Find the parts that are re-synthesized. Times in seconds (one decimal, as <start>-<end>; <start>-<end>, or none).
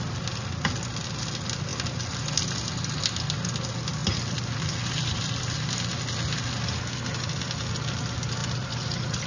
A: 4.0-5.4; 8.4-9.3